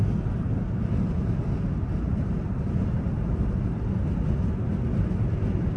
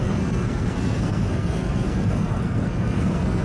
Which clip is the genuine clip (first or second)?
first